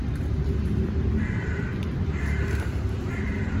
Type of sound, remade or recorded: remade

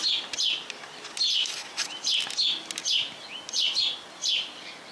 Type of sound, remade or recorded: recorded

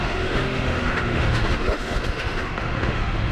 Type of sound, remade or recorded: remade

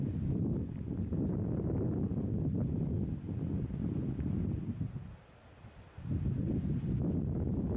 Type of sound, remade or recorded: recorded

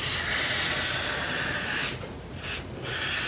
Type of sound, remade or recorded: recorded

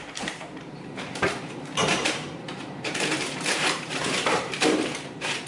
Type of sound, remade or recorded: remade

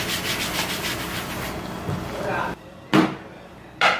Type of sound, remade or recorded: recorded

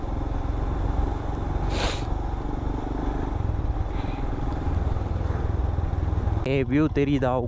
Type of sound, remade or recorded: recorded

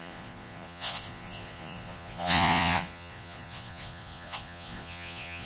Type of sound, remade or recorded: remade